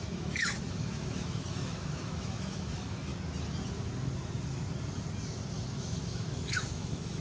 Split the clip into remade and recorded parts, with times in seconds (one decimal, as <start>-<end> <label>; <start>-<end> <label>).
0.0-3.1 remade; 3.1-5.8 recorded; 5.8-7.2 remade